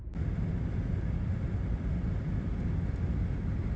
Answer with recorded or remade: recorded